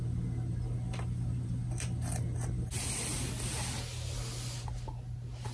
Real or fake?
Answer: real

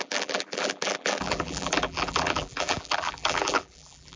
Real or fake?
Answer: fake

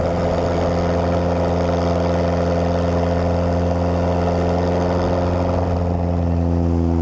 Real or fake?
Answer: real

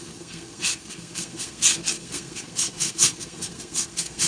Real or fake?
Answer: fake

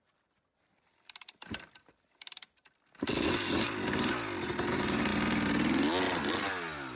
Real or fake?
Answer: real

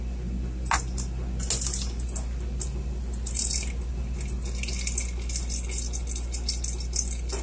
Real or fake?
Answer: real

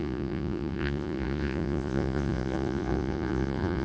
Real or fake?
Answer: fake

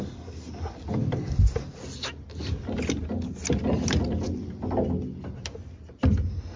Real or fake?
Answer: real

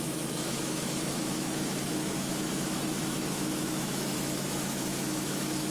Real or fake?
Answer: fake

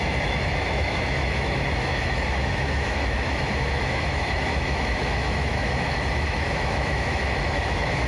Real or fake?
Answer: fake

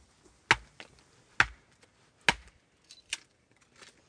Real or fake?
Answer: real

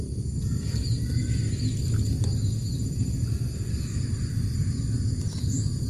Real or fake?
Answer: real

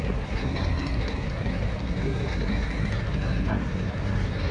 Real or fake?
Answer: fake